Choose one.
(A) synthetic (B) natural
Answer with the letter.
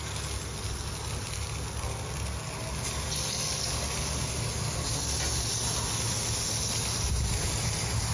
B